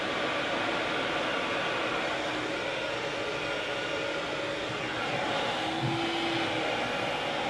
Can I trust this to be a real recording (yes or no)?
yes